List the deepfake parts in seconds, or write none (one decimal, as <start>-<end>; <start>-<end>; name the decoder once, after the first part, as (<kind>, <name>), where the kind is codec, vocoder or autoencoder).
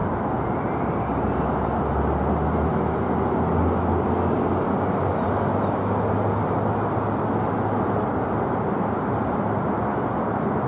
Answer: none